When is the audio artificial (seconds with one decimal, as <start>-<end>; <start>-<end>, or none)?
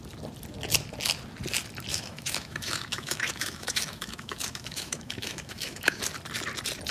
1.9-6.0